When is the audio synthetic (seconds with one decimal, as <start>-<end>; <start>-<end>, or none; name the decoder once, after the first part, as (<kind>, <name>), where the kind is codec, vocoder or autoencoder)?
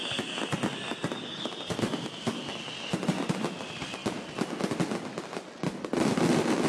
none